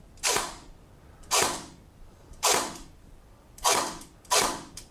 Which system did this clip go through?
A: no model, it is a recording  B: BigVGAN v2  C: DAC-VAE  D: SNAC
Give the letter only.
B